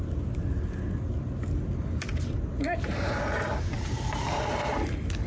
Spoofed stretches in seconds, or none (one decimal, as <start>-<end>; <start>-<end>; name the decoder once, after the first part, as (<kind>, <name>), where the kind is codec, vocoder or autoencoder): 0.0-0.6 (vocoder, BigVGAN v2); 2.1-4.7